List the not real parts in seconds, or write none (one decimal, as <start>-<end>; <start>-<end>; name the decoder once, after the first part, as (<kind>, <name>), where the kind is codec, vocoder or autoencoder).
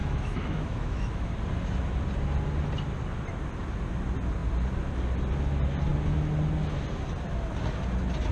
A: 0.0-1.3 (autoencoder, DAC-VAE)